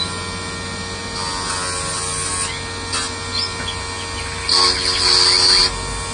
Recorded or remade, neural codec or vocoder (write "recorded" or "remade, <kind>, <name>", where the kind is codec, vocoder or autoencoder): recorded